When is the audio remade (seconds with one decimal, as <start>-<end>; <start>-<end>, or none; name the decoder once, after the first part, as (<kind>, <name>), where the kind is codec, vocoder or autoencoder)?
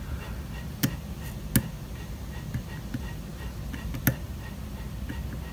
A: none